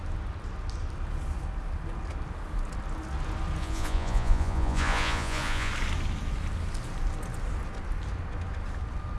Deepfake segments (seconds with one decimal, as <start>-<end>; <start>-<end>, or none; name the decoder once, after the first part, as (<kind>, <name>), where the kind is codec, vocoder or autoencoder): 3.6-5.7 (vocoder, Vocos)